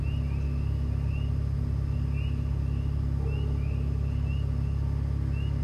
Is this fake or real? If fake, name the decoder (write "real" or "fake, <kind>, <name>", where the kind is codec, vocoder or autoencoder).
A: real